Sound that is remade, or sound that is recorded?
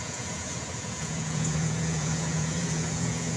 remade